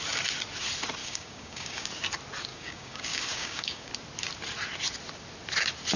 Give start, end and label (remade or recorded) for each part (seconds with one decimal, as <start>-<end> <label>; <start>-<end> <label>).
0.0-1.0 recorded; 1.0-1.9 remade; 1.9-2.5 recorded; 2.5-3.9 remade; 3.9-6.0 recorded